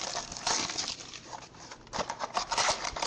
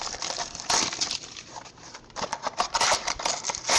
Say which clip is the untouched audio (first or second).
first